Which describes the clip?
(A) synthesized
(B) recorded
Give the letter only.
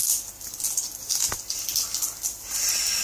B